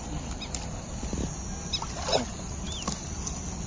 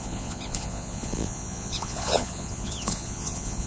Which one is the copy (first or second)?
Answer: second